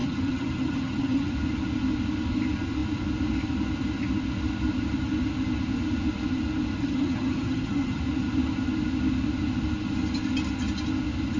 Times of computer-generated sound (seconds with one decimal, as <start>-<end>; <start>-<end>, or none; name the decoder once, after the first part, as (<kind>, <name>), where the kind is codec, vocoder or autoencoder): 0.0-1.3 (vocoder, HiFi-GAN); 6.8-8.0